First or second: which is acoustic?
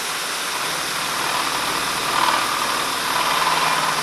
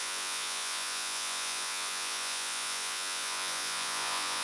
first